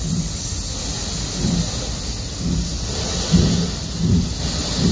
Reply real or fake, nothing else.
real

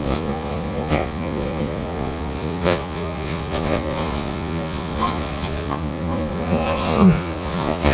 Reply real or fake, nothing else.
fake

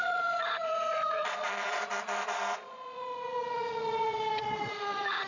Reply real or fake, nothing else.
fake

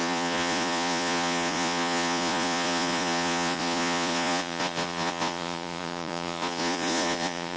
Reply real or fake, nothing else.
fake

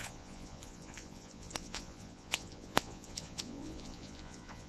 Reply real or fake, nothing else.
fake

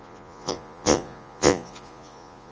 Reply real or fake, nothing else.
fake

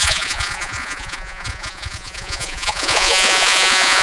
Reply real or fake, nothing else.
fake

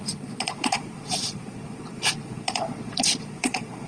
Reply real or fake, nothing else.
fake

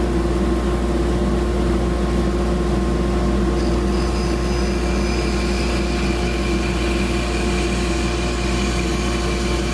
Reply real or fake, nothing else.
real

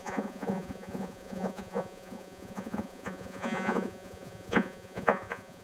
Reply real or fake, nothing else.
fake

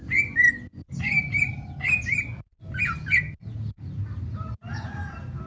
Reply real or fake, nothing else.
real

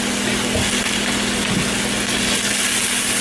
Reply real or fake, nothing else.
real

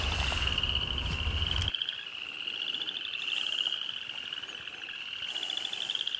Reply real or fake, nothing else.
real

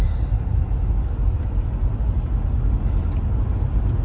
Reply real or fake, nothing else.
real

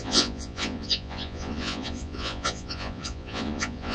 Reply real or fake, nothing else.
fake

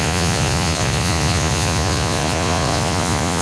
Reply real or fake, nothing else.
fake